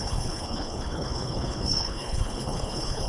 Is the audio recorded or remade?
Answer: remade